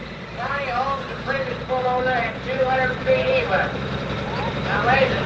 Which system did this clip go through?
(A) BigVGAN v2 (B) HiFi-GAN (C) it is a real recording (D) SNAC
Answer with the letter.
A